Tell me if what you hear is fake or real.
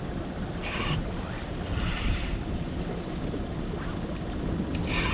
real